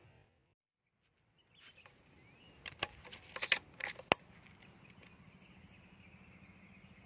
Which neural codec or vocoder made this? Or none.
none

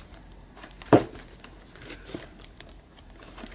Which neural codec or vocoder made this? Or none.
vocoder, BigVGAN v2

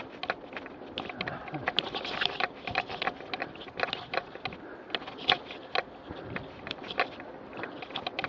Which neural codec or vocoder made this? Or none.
none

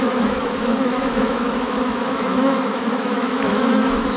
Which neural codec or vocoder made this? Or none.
autoencoder, DAC-VAE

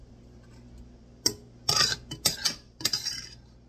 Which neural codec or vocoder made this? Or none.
none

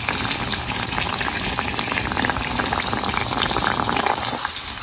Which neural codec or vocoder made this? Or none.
none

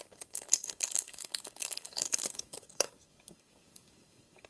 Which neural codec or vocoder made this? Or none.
codec, DAC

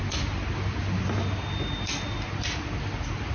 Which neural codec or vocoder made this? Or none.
none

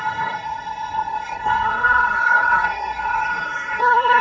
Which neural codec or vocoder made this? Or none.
codec, SNAC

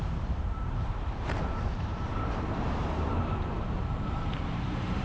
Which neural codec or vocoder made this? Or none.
vocoder, BigVGAN v2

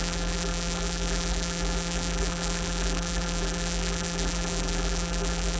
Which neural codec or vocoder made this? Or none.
vocoder, BigVGAN v2